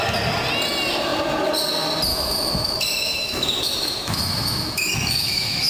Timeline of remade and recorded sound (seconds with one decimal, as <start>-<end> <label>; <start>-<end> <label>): 0.0-2.1 recorded; 2.1-5.7 remade